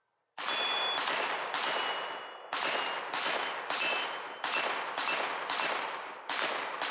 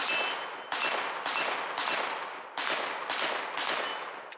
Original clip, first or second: second